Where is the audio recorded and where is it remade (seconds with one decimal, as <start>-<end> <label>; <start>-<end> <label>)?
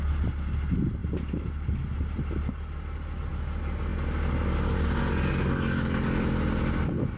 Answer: 0.0-7.2 recorded